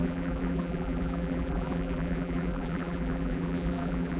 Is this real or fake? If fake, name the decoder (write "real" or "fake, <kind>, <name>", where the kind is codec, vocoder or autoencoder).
fake, vocoder, BigVGAN v2